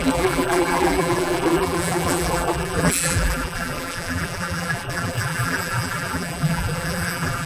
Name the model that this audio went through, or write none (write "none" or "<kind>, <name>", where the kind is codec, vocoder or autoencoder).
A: vocoder, BigVGAN v2